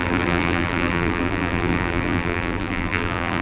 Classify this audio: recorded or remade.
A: remade